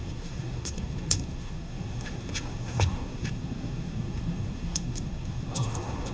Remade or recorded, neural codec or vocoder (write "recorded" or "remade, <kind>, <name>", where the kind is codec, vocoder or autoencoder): remade, codec, SNAC